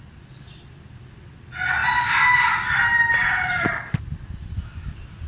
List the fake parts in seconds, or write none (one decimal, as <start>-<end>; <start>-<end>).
none